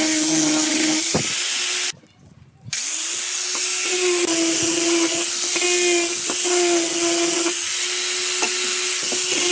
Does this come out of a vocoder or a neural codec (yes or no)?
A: no